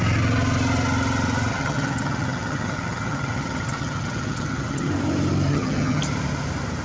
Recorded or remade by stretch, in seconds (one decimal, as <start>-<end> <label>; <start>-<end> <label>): 0.0-1.5 recorded; 1.5-4.9 remade; 4.9-5.5 recorded; 5.5-6.0 remade; 6.0-6.8 recorded